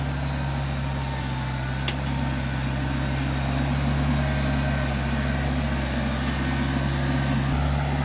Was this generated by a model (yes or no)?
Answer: no